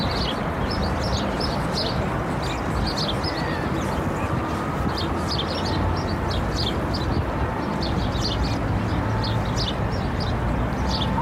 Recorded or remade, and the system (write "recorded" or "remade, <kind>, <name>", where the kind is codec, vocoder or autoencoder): recorded